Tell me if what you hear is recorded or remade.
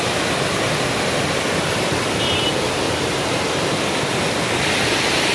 recorded